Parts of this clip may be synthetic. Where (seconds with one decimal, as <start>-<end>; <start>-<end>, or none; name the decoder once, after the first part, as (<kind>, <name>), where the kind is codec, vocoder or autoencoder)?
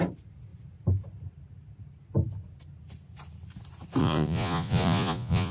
4.0-5.5 (vocoder, Vocos)